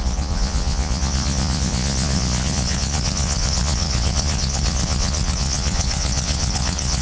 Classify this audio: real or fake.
fake